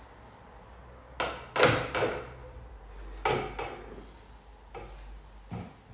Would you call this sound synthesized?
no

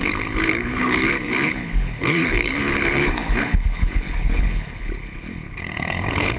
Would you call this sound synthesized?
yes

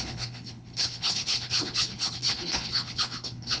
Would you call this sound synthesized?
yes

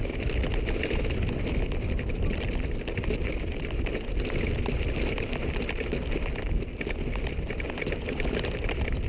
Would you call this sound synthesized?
no